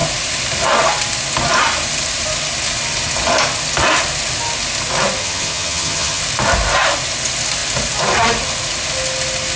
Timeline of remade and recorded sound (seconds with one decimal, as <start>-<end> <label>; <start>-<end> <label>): 0.0-5.2 recorded; 5.2-6.2 remade; 6.2-9.6 recorded